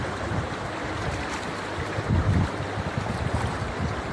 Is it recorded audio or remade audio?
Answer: remade